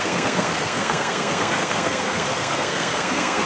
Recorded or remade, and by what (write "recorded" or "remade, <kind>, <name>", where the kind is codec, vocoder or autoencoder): remade, codec, SNAC